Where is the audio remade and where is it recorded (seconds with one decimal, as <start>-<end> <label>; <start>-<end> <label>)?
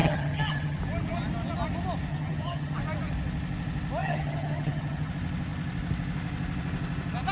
0.0-0.8 remade; 0.8-2.1 recorded; 2.1-2.8 remade; 2.8-4.0 recorded; 4.0-5.1 remade; 5.1-7.3 recorded